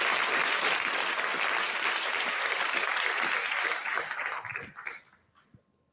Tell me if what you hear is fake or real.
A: real